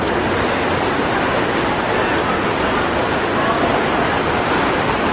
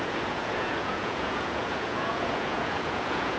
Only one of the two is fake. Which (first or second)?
second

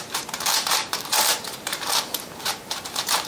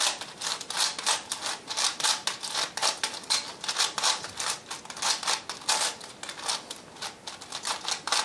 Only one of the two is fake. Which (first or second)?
first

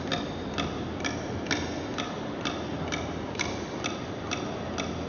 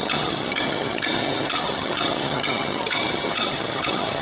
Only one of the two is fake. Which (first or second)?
second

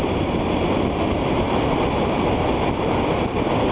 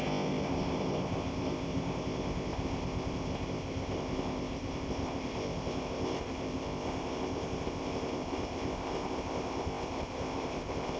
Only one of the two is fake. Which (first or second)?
second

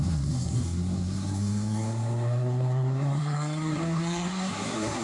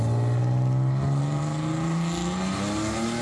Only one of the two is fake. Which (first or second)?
first